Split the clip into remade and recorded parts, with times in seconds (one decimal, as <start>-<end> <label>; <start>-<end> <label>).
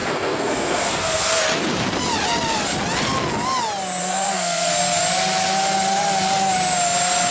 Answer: 0.0-1.4 remade; 1.4-4.0 recorded; 4.0-4.7 remade; 4.7-7.3 recorded